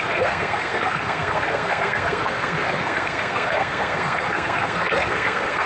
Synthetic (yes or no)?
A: yes